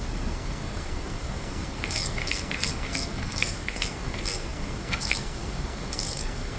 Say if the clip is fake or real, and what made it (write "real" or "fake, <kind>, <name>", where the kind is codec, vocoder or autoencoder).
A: fake, codec, SNAC